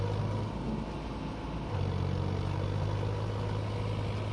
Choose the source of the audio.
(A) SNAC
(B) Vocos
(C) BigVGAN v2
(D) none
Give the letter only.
D